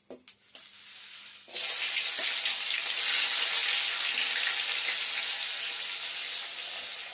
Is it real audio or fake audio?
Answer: real